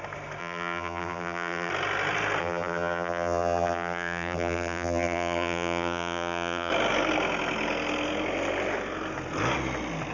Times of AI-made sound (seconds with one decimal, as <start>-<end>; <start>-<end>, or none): 0.4-1.7; 2.4-6.7